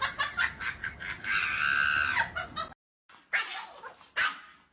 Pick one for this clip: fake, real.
real